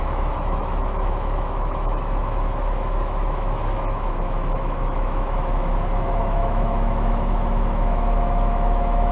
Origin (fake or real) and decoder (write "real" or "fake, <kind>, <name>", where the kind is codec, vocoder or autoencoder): fake, autoencoder, DAC-VAE